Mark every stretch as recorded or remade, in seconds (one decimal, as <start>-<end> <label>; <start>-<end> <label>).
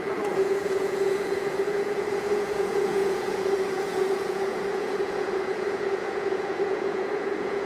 0.0-7.7 remade